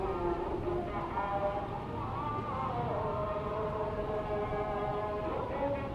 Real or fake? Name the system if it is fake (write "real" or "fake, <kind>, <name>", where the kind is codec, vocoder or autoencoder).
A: real